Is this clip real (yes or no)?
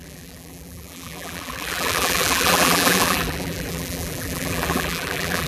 no